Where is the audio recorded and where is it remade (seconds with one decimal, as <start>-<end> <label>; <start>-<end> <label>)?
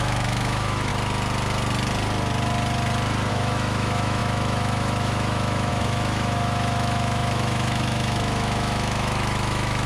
0.0-0.9 remade; 0.9-3.3 recorded; 3.3-9.9 remade